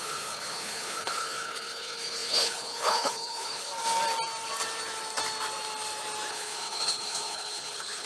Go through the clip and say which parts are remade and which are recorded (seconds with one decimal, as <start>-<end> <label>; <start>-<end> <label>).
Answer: 0.0-3.7 remade; 3.7-6.3 recorded; 6.3-8.1 remade